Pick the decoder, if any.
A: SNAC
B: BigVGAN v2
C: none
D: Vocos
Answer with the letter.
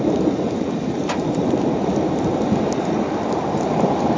C